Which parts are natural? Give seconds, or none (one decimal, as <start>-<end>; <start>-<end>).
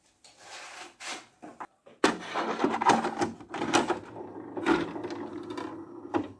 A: 0.0-6.4